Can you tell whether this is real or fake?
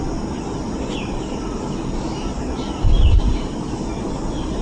real